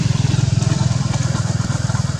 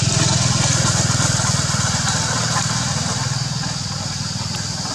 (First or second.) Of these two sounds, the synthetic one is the first